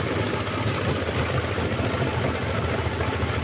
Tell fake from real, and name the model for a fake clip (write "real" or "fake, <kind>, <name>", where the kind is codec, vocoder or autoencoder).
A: real